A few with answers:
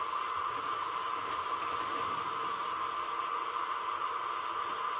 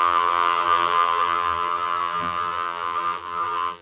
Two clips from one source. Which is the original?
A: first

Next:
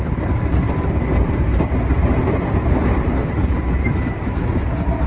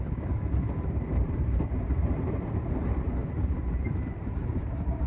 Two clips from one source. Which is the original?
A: first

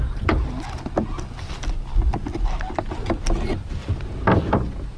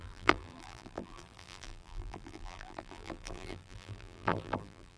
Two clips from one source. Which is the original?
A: first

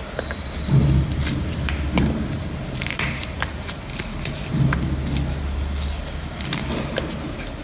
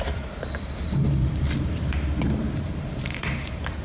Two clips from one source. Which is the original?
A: first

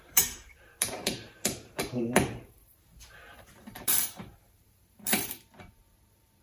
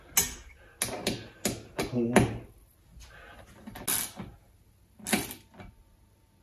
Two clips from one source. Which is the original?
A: second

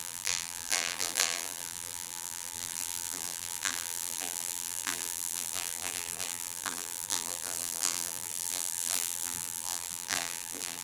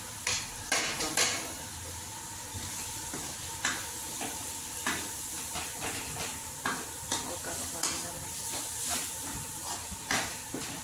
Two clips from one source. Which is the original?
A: second